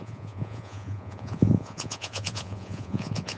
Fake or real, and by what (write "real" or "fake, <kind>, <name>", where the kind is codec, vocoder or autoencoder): fake, vocoder, Vocos